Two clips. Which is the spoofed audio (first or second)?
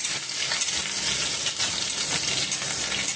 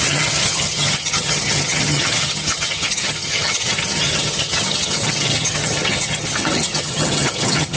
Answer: second